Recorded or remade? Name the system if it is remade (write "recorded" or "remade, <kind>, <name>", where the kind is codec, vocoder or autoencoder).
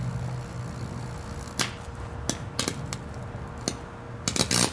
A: recorded